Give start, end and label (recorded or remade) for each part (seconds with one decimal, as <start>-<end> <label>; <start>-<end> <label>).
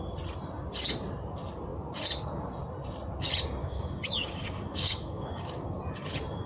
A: 0.0-3.6 recorded; 3.6-5.8 remade; 5.8-6.5 recorded